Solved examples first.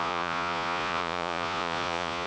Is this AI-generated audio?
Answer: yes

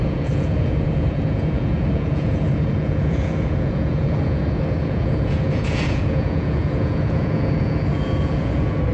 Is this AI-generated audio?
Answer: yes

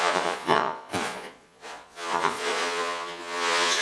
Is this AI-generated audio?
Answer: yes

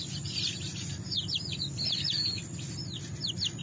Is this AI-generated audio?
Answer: no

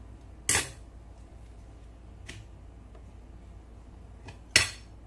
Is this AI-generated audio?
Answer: no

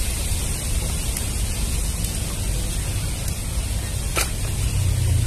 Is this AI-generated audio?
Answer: no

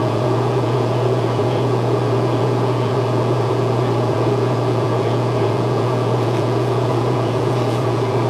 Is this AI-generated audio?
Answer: yes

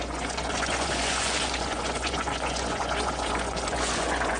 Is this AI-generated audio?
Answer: yes